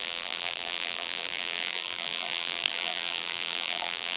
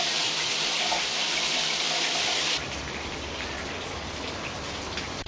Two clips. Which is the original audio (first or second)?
second